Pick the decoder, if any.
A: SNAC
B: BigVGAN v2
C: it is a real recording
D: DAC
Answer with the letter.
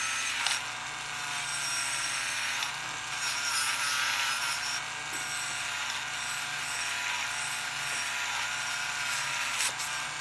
C